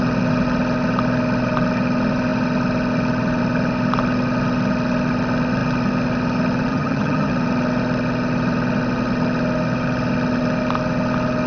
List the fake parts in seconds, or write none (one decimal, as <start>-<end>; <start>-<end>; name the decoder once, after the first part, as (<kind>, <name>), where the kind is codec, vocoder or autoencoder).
6.7-7.3 (vocoder, HiFi-GAN)